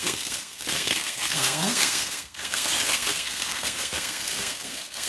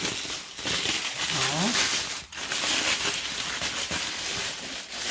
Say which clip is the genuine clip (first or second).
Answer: second